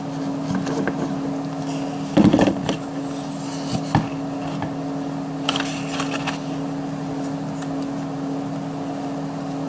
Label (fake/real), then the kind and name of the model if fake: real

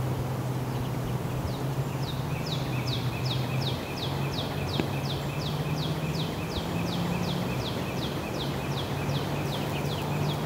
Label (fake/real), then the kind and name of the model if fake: real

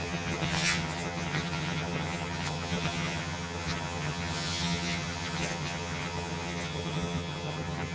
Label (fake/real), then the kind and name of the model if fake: fake, vocoder, HiFi-GAN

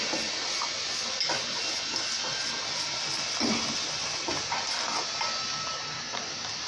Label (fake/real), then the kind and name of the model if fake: real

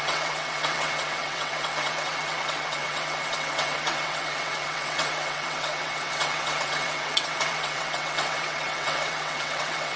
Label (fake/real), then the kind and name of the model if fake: fake, vocoder, WaveNeXt